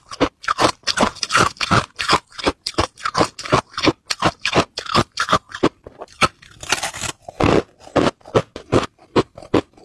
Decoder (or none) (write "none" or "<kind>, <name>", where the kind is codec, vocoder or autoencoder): none